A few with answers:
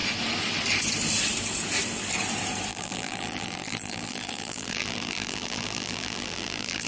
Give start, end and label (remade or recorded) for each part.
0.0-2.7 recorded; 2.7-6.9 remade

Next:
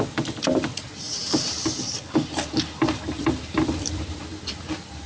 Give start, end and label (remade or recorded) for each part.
0.0-1.2 recorded; 1.2-4.2 remade; 4.2-5.1 recorded

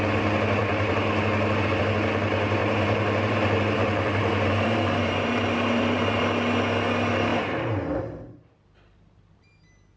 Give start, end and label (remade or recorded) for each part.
0.0-2.6 recorded; 2.6-6.2 remade; 6.2-10.0 recorded

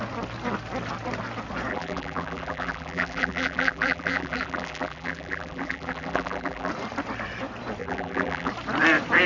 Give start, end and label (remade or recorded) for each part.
0.0-1.7 recorded; 1.7-6.7 remade; 6.7-7.8 recorded; 7.8-8.5 remade; 8.5-9.3 recorded

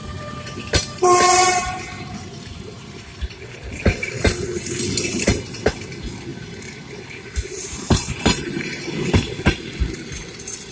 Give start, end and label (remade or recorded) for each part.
0.0-4.1 remade; 4.1-5.1 recorded; 5.1-5.8 remade; 5.8-6.3 recorded; 6.3-9.3 remade; 9.3-10.7 recorded

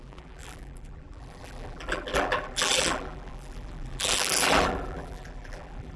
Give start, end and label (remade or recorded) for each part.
0.0-6.0 remade

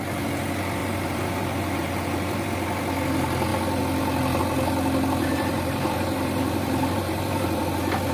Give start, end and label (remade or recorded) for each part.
0.0-0.8 recorded; 0.8-2.5 remade; 2.5-5.2 recorded; 5.2-7.6 remade; 7.6-8.1 recorded

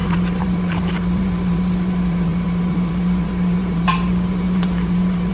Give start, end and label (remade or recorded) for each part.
0.0-5.3 remade